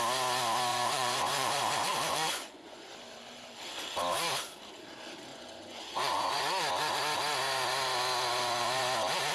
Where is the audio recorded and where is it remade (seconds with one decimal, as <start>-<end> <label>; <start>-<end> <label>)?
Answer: 0.0-0.7 recorded; 0.7-2.9 remade; 2.9-5.3 recorded; 5.3-6.4 remade; 6.4-9.3 recorded

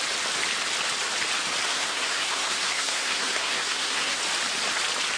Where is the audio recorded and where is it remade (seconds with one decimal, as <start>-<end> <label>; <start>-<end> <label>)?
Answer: 0.0-1.7 recorded; 1.7-4.2 remade; 4.2-5.2 recorded

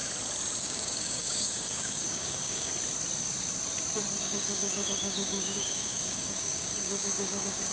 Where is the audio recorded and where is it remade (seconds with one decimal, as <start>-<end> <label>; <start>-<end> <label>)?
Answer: 0.0-0.6 recorded; 0.6-2.7 remade; 2.7-4.2 recorded; 4.2-7.7 remade